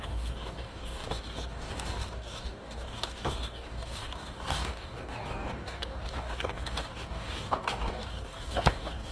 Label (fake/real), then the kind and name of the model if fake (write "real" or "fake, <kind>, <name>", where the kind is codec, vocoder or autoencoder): fake, codec, DAC